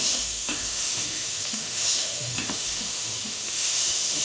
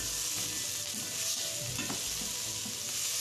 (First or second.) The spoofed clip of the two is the first